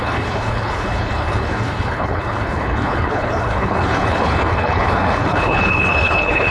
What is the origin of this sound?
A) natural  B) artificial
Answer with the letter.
B